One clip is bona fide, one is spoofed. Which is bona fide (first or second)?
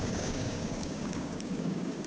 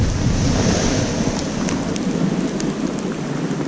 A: second